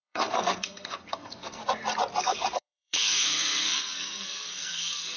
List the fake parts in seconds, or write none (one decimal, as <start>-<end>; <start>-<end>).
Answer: 0.0-1.6; 2.2-5.2